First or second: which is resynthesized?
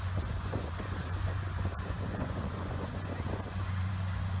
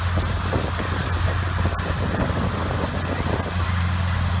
first